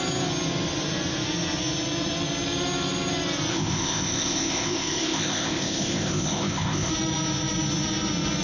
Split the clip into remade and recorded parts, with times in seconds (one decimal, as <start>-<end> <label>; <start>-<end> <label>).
0.0-3.5 recorded; 3.5-6.9 remade; 6.9-8.4 recorded